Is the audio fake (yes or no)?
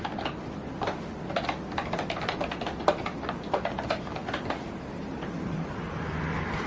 no